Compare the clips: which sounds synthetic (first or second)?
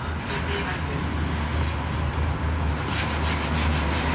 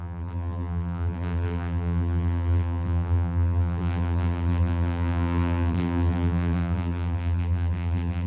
second